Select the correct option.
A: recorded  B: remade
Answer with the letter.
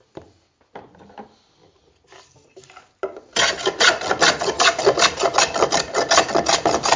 A